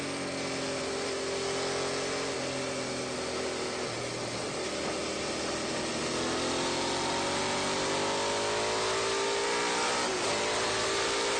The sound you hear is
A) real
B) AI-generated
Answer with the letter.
A